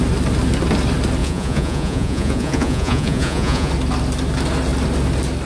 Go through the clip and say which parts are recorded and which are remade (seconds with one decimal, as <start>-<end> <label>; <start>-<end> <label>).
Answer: 0.0-1.2 recorded; 1.2-3.7 remade; 3.7-5.5 recorded